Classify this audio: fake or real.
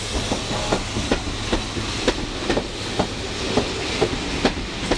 real